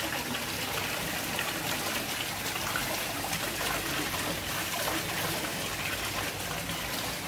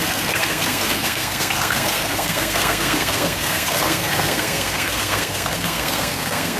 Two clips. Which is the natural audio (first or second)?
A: first